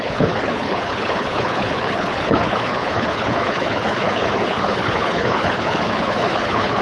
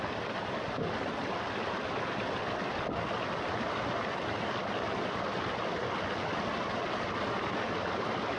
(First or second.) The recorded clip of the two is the second